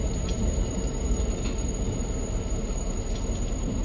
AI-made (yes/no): no